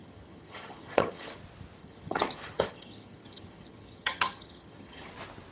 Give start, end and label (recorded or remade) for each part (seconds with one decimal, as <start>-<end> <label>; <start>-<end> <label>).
0.0-1.4 remade; 1.4-1.8 recorded; 1.8-5.1 remade; 5.1-5.5 recorded